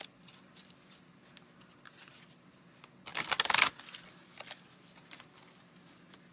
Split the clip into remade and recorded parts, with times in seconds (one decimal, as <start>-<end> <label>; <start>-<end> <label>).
0.0-6.3 recorded